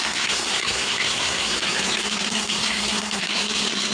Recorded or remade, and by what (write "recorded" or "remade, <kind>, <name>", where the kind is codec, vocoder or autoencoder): remade, codec, SNAC